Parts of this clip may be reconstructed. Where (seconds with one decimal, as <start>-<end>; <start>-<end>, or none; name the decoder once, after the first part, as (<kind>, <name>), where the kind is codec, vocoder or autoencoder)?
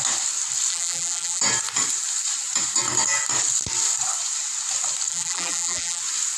0.7-1.4 (vocoder, BigVGAN v2); 5.1-6.0